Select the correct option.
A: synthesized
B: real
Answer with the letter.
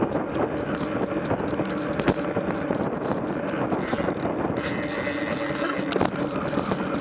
B